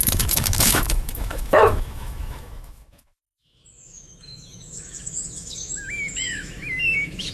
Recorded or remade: remade